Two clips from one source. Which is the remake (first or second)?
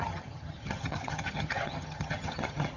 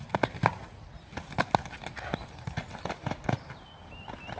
first